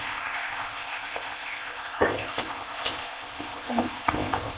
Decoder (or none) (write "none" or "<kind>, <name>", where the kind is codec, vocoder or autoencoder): codec, ZipCodec